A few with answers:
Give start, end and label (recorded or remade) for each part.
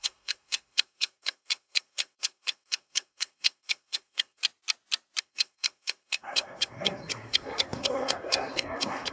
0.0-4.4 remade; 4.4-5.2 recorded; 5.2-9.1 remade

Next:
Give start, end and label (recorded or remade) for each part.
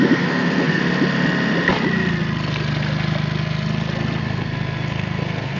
0.0-0.8 remade; 0.8-4.2 recorded; 4.2-5.6 remade